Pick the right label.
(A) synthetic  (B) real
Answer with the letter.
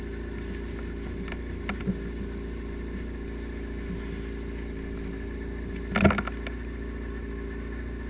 B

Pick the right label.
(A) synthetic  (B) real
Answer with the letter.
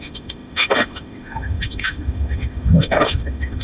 A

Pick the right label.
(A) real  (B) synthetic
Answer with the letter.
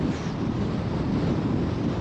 A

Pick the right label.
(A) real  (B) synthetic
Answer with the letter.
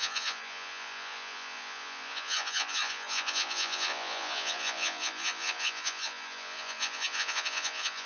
B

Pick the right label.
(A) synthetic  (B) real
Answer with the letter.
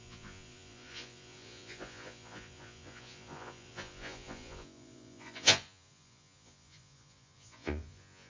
A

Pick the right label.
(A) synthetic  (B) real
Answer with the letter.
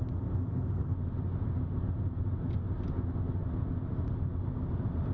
B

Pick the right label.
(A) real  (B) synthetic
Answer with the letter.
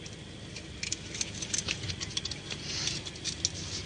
A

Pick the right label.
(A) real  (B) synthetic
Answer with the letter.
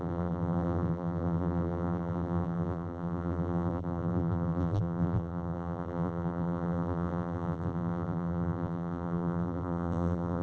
B